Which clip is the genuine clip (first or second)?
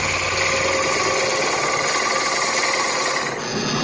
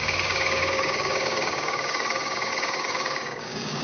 first